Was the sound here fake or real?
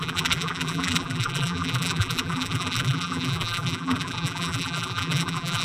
fake